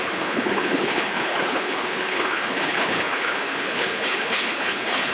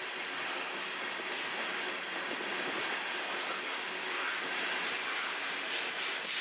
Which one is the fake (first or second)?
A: first